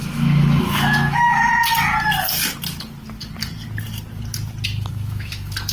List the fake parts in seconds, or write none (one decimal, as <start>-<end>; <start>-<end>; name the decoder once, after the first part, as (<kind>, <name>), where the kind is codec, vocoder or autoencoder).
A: 0.0-1.5 (autoencoder, DAC-VAE); 4.9-5.7